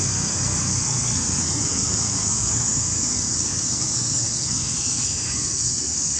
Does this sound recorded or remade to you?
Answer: remade